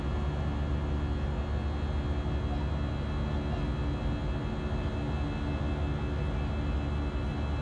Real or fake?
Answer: real